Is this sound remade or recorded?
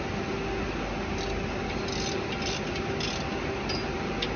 recorded